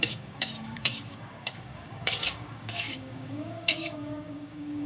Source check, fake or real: fake